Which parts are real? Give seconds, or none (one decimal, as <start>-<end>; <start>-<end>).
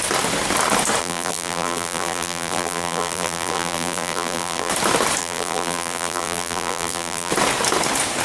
0.0-1.0; 4.7-5.2; 7.3-8.2